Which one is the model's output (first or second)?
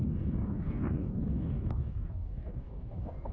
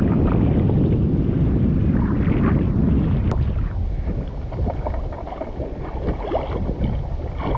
first